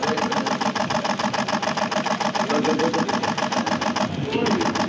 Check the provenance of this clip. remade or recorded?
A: recorded